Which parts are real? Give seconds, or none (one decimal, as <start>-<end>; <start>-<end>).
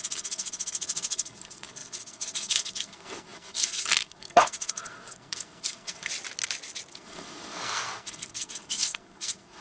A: 6.1-6.9